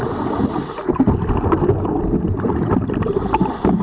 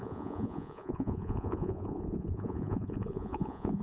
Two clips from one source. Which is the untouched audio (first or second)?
first